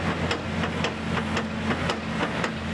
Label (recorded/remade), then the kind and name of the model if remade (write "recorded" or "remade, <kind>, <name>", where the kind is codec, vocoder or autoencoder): recorded